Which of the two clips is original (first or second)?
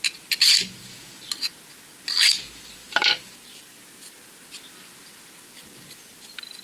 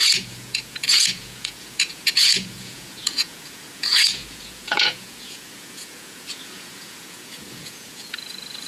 first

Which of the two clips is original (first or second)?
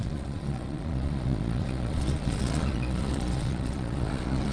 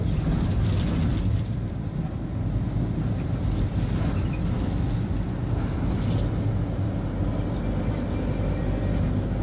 second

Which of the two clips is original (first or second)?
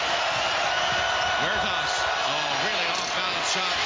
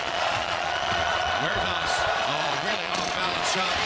first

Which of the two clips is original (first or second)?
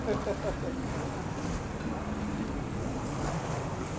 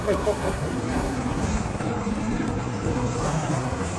first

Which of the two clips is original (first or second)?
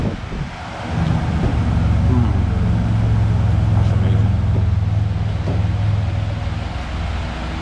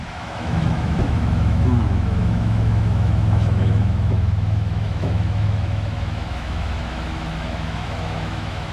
first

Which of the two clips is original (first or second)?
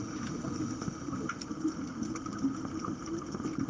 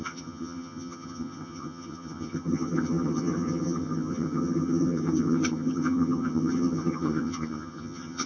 first